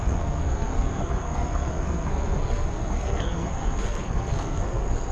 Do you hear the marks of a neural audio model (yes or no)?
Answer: yes